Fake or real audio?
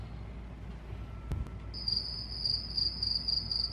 real